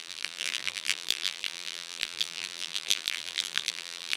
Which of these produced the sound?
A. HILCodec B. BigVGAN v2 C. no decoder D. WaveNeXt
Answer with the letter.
B